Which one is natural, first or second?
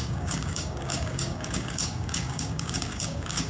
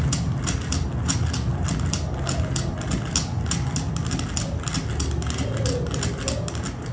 second